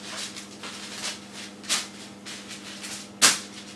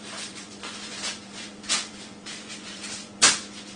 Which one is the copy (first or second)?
second